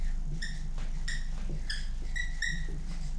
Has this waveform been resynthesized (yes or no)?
no